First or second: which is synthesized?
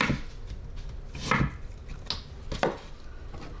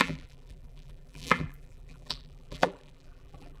second